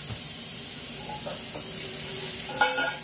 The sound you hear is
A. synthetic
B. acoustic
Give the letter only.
B